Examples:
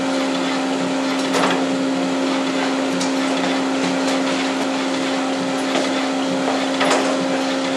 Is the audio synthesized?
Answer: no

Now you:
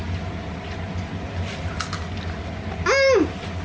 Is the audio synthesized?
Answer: no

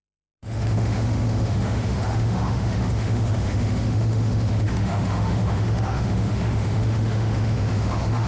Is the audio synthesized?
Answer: yes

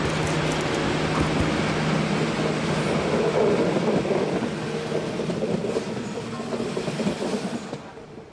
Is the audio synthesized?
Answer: no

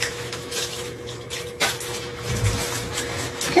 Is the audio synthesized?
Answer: yes